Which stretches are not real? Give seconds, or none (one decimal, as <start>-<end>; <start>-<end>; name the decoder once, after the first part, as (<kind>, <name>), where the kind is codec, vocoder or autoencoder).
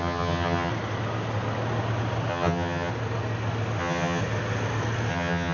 0.0-0.7 (vocoder, HiFi-GAN); 2.3-2.9; 3.8-4.2; 5.1-5.5